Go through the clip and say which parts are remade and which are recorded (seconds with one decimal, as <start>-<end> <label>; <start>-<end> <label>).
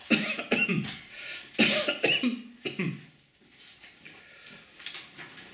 0.0-5.5 recorded